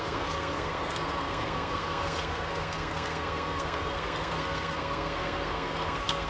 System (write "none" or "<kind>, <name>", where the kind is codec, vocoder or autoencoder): codec, SNAC